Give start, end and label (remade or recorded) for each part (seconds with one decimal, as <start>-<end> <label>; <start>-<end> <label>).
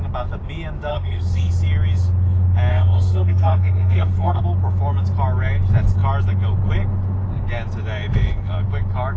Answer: 0.0-0.9 recorded; 0.9-1.5 remade; 1.5-2.7 recorded; 2.7-4.4 remade; 4.4-9.2 recorded